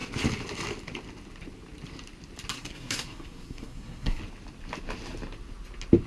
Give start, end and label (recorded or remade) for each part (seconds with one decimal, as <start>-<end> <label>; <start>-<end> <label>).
0.0-2.5 recorded; 2.5-4.2 remade; 4.2-6.1 recorded